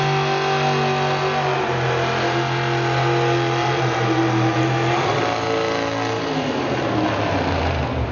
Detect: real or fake real